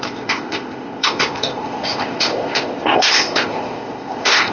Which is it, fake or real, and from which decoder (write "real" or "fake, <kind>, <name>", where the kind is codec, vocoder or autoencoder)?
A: fake, codec, ZipCodec